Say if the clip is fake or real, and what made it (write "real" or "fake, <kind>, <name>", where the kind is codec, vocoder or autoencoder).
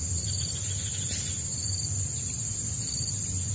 real